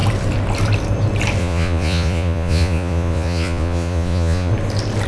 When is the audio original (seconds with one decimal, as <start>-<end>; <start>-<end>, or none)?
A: 0.0-1.4; 4.5-5.1